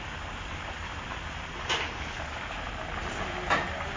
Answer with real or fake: real